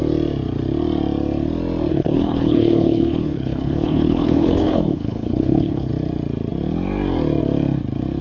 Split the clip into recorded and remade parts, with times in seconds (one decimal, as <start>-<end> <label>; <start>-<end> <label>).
0.0-1.9 recorded; 1.9-5.9 remade; 5.9-8.2 recorded